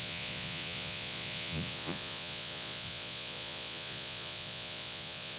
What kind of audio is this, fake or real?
fake